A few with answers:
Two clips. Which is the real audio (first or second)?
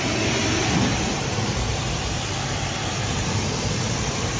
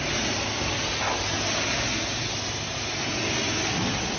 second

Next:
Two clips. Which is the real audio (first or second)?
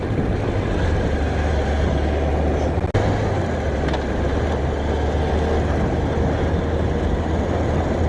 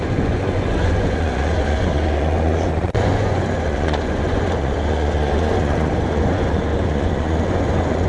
first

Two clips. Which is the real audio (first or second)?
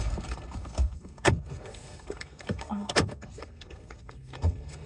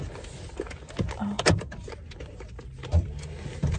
second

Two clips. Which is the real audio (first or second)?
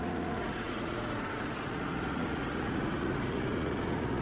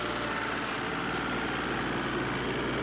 second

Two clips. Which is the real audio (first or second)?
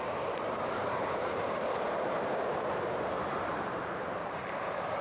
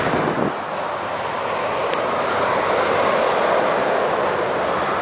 second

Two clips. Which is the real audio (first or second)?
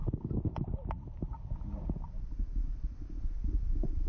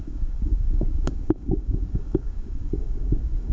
first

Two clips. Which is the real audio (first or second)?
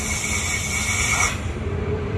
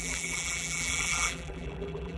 first